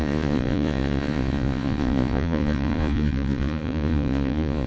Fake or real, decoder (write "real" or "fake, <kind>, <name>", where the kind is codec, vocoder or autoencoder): fake, vocoder, Vocos